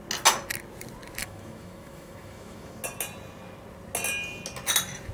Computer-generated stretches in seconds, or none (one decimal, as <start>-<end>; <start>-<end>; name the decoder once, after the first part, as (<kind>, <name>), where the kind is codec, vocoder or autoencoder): 1.2-2.8 (autoencoder, DAC-VAE)